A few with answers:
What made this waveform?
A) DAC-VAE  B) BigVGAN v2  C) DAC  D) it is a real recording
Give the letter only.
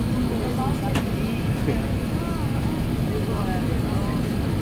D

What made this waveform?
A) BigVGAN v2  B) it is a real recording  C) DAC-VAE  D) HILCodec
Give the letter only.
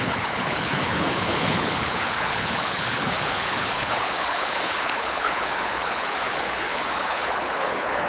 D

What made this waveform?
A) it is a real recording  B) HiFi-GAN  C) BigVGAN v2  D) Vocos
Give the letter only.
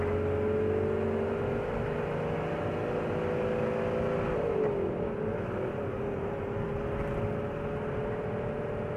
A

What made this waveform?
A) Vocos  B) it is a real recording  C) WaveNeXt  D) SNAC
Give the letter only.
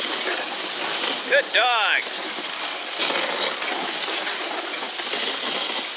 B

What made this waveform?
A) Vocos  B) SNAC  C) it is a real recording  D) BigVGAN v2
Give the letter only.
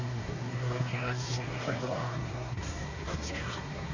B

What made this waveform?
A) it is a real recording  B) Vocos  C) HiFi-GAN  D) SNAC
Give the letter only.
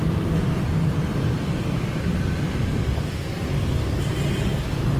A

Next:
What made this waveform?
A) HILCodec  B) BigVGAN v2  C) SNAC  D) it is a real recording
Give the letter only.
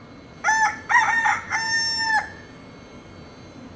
D